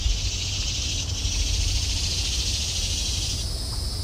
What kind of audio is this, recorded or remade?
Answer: recorded